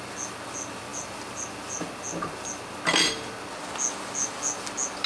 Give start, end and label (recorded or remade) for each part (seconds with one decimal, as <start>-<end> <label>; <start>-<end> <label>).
0.0-5.1 recorded